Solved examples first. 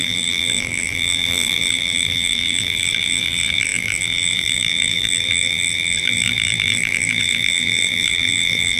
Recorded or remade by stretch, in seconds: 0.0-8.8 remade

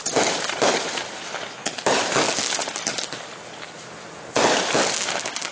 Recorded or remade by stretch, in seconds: 0.0-5.5 recorded

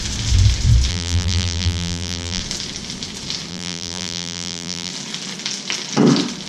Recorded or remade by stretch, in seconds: 0.0-0.9 recorded; 0.9-2.4 remade; 2.4-3.5 recorded; 3.5-4.9 remade; 4.9-6.5 recorded

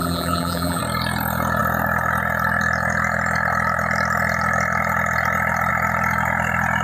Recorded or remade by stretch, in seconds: 0.0-0.8 remade; 0.8-6.8 recorded

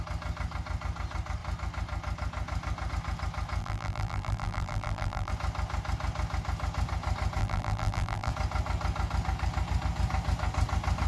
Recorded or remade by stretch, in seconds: 0.0-3.6 recorded; 3.6-5.3 remade; 5.3-7.4 recorded; 7.4-8.3 remade; 8.3-11.1 recorded